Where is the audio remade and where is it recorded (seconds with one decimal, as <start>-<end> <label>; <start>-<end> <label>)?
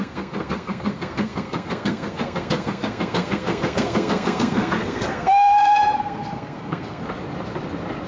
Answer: 0.0-7.0 remade; 7.0-8.1 recorded